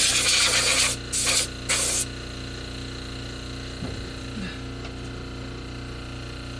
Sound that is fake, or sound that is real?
real